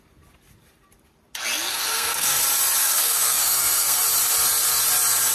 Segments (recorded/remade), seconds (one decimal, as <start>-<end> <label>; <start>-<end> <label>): 0.0-1.7 recorded; 1.7-2.4 remade; 2.4-2.8 recorded; 2.8-4.0 remade; 4.0-5.3 recorded